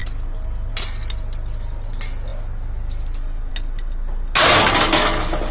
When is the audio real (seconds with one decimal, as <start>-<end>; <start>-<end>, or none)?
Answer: 0.0-5.5